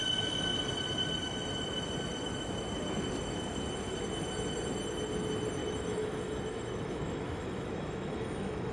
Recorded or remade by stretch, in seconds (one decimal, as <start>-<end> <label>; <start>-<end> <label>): 0.0-5.6 recorded; 5.6-8.7 remade